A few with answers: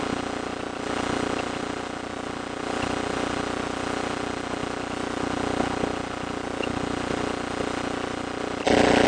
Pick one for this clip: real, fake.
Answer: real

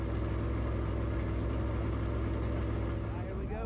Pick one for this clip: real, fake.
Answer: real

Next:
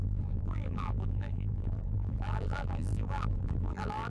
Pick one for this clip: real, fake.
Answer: fake